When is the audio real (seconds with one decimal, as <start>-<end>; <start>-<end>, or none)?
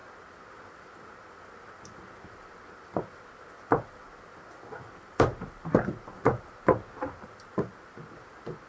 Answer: 0.0-8.7